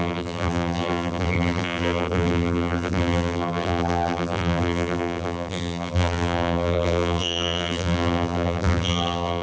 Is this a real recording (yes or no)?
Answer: no